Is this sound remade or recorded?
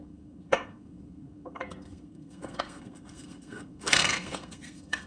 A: remade